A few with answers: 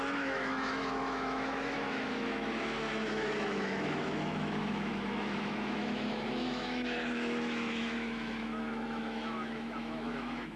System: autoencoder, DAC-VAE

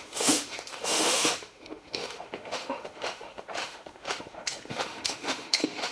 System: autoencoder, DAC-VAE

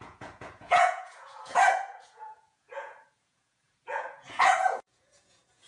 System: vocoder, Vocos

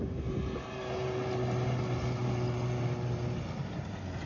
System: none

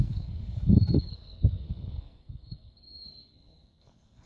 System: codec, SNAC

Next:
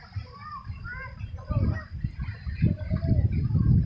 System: none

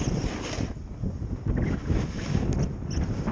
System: none